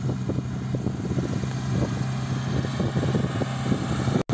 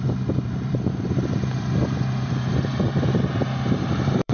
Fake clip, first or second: second